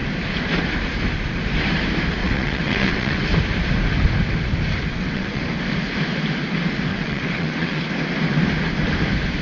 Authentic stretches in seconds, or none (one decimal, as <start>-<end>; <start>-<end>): 0.0-2.2; 3.3-4.9; 5.4-6.9; 7.8-9.4